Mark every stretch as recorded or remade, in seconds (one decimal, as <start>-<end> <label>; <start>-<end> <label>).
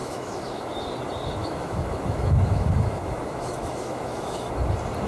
0.0-0.6 remade; 0.6-1.4 recorded; 1.4-4.5 remade; 4.5-5.1 recorded